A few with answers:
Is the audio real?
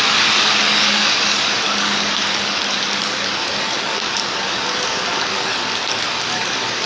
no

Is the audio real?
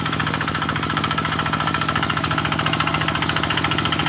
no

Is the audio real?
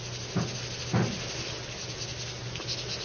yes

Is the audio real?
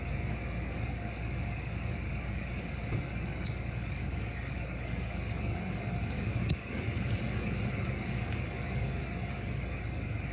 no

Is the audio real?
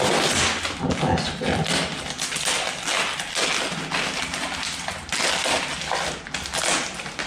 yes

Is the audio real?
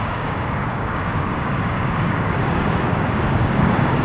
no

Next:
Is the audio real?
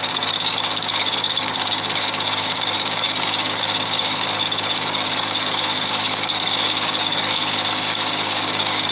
no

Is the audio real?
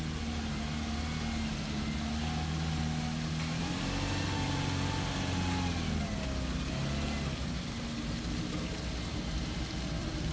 yes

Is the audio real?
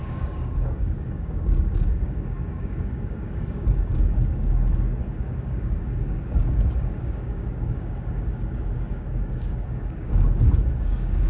no